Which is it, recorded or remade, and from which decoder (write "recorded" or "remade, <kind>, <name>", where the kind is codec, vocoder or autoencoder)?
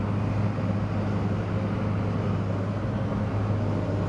recorded